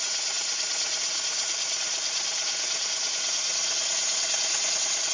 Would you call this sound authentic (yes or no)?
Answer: no